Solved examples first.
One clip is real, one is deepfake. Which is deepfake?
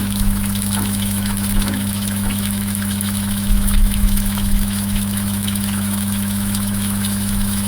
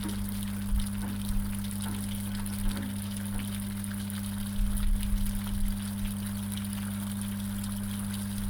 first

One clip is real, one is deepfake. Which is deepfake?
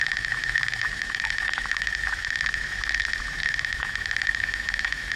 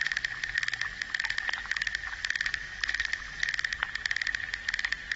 first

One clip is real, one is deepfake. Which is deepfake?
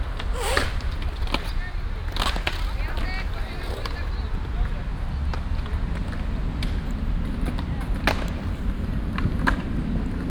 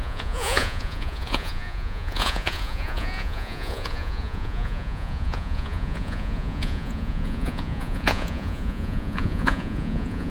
second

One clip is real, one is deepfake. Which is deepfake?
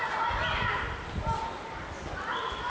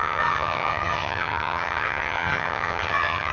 second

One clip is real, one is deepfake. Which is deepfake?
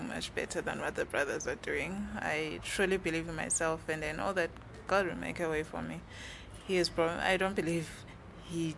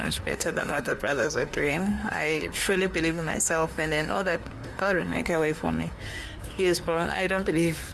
second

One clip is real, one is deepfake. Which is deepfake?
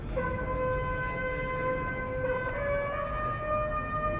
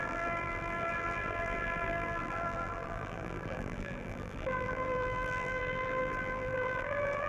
second